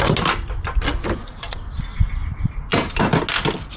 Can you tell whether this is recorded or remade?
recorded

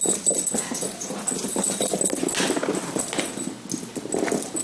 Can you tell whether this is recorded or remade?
recorded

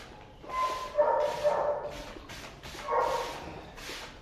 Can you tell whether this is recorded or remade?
recorded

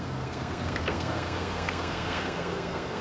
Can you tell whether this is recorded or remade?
remade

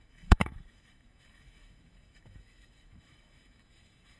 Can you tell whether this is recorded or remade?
remade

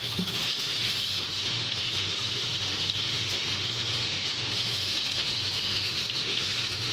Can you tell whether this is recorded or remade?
remade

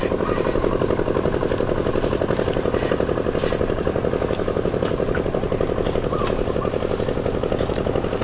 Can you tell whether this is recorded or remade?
recorded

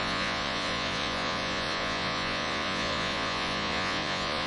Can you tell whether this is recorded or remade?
remade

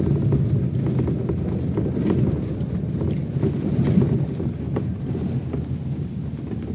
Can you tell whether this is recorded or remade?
recorded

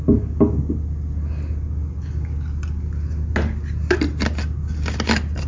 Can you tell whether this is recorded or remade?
recorded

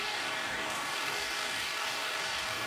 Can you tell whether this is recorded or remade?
remade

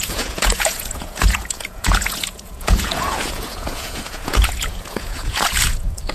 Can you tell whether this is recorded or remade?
remade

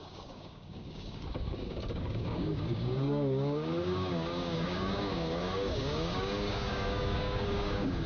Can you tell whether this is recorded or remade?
remade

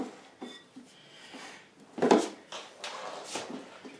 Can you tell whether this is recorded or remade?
recorded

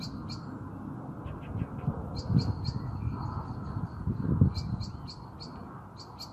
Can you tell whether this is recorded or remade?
recorded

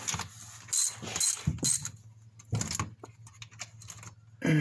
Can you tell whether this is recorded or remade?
recorded